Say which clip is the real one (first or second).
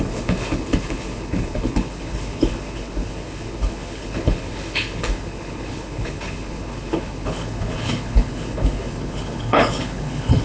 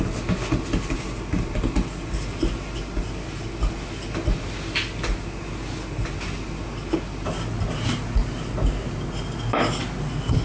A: second